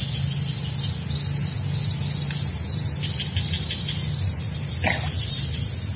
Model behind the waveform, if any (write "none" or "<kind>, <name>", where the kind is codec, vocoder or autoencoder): none